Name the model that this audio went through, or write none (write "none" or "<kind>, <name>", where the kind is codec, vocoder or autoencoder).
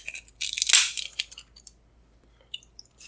none